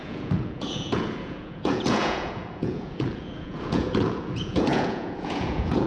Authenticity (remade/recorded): remade